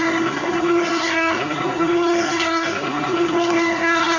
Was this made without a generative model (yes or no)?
no